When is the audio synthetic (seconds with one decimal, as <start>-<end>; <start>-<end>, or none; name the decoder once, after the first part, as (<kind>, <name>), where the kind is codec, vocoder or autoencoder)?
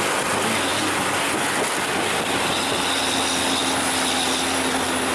none